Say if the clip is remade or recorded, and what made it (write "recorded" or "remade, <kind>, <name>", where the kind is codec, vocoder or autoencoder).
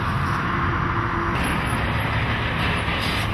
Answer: recorded